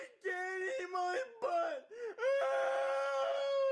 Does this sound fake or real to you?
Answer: real